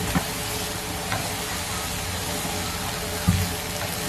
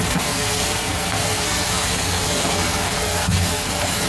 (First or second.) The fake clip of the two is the second